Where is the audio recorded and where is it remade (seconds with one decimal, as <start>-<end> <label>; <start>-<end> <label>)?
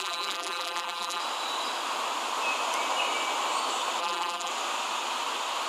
0.0-1.2 remade; 1.2-4.0 recorded; 4.0-4.5 remade; 4.5-5.7 recorded